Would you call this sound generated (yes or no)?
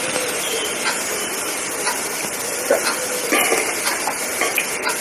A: no